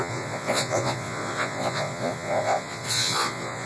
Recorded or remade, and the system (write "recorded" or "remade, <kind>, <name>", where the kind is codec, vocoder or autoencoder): remade, vocoder, Vocos